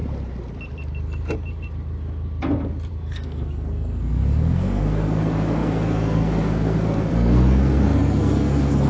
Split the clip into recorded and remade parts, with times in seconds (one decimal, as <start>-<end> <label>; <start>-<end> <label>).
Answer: 0.0-2.9 recorded; 2.9-8.9 remade